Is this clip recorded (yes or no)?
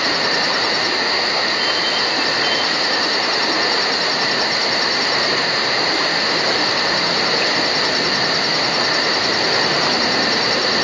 yes